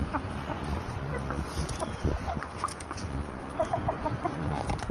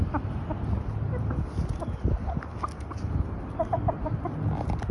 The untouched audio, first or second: second